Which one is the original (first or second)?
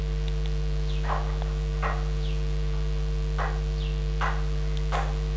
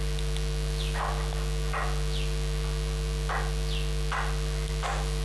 second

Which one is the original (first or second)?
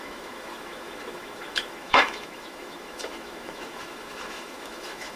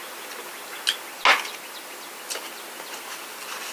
second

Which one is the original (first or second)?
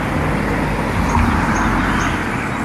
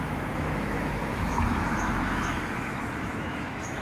first